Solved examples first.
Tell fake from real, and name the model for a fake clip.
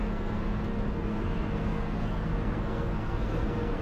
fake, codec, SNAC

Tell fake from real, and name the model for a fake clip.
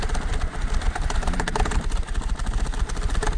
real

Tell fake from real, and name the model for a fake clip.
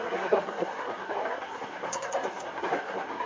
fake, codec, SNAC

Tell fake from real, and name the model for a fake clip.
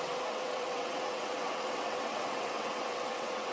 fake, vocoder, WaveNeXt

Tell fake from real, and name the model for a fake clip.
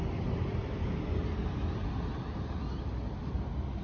real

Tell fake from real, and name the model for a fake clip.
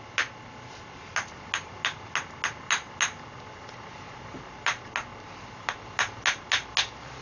real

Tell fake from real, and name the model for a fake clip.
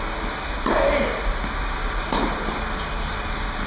real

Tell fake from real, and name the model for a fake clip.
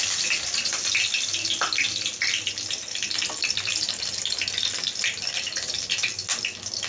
real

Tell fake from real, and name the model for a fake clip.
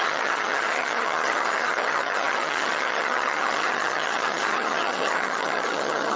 fake, vocoder, HiFi-GAN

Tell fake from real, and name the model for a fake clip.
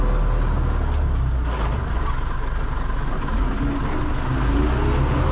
real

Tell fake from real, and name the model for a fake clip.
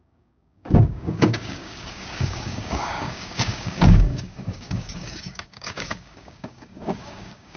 fake, codec, DAC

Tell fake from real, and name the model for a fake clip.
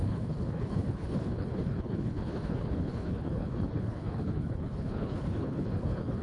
fake, codec, HILCodec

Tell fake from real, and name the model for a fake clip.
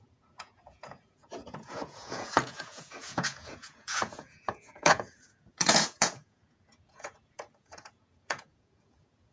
fake, vocoder, Vocos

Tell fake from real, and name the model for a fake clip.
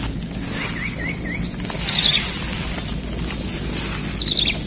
real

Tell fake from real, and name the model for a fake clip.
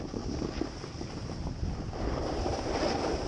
real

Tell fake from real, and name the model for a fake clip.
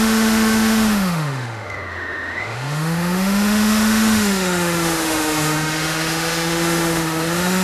fake, autoencoder, DAC-VAE